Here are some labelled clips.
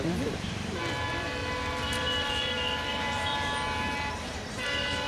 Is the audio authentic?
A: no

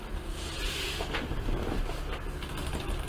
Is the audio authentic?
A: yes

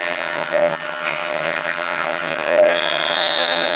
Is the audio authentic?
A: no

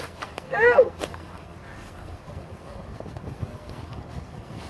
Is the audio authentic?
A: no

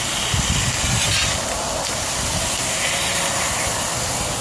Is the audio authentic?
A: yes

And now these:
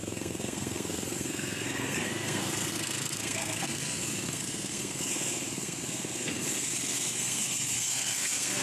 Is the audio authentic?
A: no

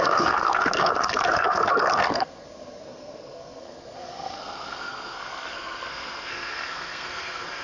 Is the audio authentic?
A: no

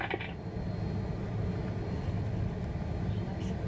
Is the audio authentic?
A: yes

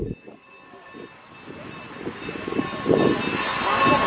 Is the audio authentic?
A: yes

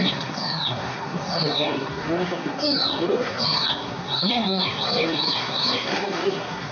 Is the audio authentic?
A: no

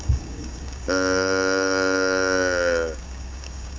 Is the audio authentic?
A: no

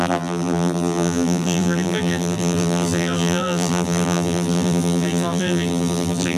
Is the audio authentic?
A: no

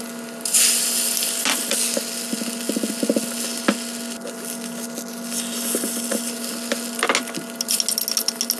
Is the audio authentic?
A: yes